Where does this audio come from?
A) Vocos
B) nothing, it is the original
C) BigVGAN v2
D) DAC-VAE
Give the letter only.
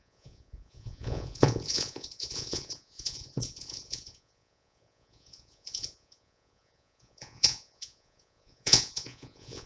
A